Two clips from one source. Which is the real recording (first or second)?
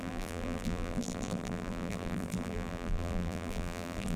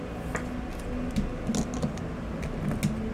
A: second